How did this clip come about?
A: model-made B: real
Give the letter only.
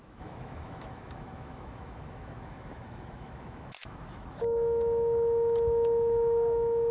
A